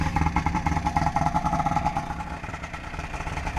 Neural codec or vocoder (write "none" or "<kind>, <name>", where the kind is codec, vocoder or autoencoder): vocoder, BigVGAN v2